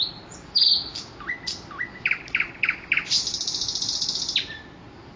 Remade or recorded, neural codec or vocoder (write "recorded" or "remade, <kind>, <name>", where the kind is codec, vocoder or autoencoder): recorded